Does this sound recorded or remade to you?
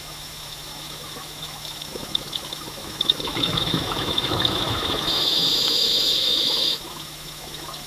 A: remade